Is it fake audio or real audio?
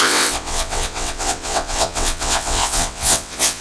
fake